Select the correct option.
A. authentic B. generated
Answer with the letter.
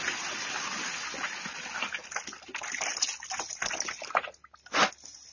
A